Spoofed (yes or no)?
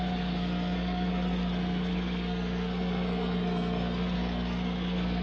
yes